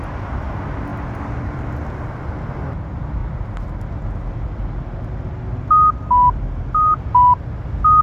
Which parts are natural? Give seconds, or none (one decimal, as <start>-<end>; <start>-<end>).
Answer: 0.0-8.0